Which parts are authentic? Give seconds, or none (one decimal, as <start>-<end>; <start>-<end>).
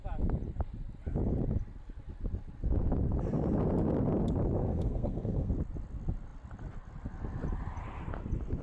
0.0-4.6; 5.5-8.6